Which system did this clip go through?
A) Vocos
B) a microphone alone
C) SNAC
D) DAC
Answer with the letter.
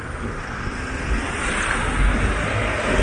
B